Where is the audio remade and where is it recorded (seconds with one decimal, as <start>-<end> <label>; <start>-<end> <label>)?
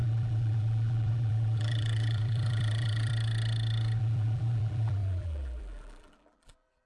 0.0-3.1 remade; 3.1-4.0 recorded; 4.0-6.9 remade